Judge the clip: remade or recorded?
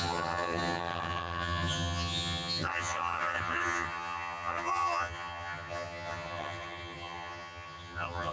remade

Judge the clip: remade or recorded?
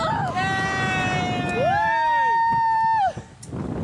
recorded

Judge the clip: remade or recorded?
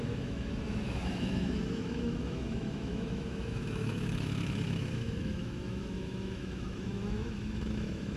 remade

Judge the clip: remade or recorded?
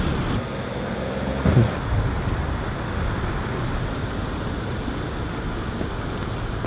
recorded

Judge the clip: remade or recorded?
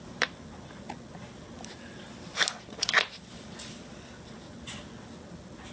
recorded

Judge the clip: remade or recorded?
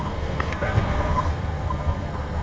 remade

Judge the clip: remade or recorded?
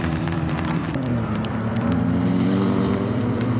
remade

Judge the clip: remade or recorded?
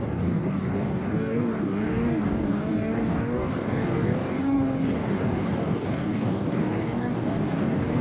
remade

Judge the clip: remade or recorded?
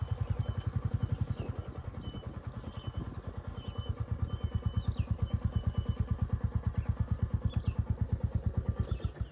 recorded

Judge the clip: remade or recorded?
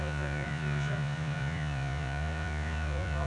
remade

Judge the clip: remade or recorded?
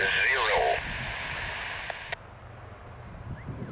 recorded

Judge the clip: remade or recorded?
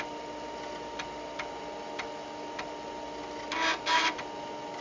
recorded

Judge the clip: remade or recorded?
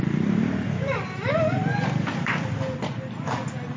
recorded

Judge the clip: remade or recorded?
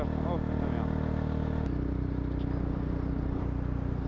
recorded